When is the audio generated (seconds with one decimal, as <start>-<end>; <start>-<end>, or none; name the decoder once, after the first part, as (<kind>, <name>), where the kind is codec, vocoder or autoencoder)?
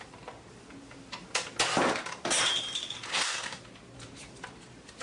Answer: 3.1-3.6 (codec, SNAC)